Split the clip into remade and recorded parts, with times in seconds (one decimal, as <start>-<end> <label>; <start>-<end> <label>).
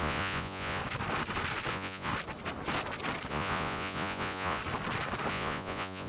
0.0-0.8 remade; 0.8-1.7 recorded; 1.7-2.1 remade; 2.1-3.3 recorded; 3.3-4.6 remade; 4.6-5.3 recorded; 5.3-6.1 remade